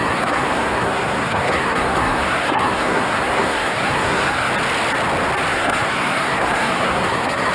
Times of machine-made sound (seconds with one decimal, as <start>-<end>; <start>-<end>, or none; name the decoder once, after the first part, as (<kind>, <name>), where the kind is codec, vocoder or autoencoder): 0.0-4.5 (codec, SNAC); 5.5-7.5